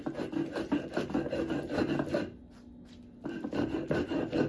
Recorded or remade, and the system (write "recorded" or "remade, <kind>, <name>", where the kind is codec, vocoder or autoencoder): recorded